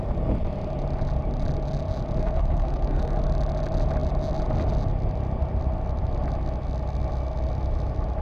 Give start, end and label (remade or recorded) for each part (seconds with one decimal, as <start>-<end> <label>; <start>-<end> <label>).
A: 0.0-2.2 recorded; 2.2-3.2 remade; 3.2-8.2 recorded